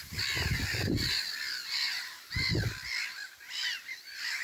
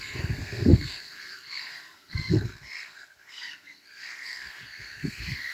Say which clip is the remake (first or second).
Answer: second